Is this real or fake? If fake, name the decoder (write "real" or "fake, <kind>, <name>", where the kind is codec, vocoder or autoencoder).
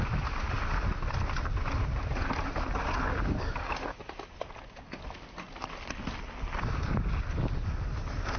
real